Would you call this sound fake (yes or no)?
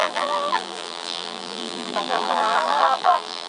yes